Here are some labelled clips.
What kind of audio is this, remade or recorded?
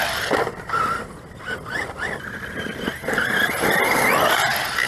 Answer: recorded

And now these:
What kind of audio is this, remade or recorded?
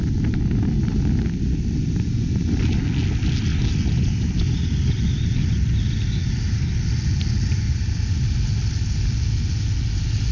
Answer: recorded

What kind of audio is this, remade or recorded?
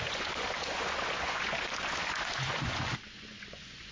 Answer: remade